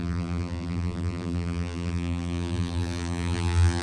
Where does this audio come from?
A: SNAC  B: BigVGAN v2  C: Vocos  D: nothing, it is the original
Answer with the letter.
B